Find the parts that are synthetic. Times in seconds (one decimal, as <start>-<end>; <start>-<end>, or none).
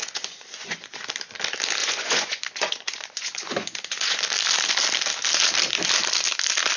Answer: 0.0-1.0; 1.8-4.2